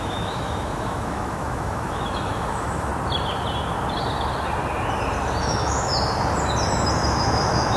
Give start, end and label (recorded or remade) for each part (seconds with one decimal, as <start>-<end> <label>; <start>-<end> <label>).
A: 0.0-2.9 remade; 2.9-5.4 recorded; 5.4-5.9 remade; 5.9-7.1 recorded; 7.1-7.8 remade